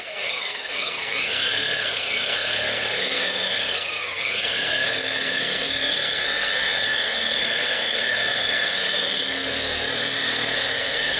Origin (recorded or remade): remade